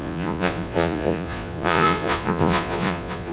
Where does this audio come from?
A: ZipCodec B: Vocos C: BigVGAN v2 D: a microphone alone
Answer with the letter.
B